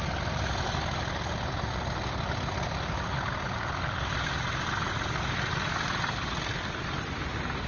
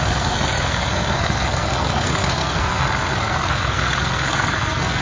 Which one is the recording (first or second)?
first